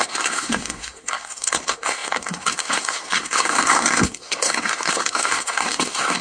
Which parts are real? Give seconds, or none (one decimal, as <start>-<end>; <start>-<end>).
none